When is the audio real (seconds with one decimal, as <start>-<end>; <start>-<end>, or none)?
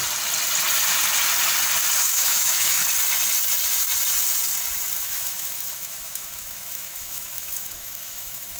0.0-2.0; 2.8-5.0